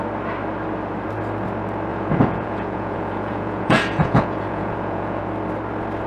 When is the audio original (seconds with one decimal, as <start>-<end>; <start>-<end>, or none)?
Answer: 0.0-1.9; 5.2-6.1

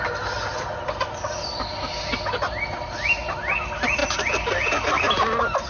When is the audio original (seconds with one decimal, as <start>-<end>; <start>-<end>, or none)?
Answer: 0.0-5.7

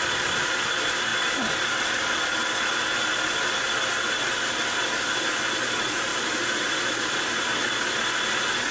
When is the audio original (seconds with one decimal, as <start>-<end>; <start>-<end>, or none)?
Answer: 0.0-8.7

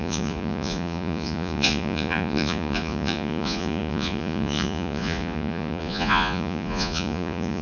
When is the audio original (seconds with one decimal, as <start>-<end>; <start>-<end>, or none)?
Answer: none